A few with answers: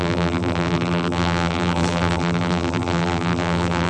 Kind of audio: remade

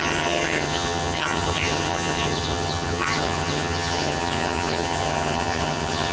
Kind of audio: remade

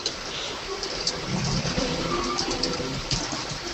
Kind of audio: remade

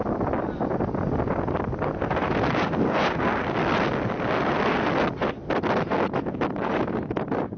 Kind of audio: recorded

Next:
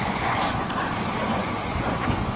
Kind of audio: remade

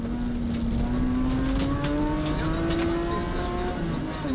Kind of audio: recorded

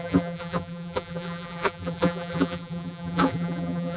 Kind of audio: remade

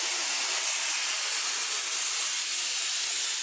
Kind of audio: recorded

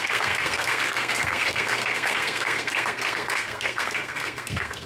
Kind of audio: remade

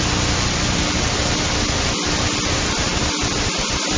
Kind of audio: recorded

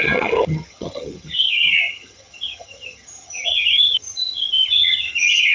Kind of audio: remade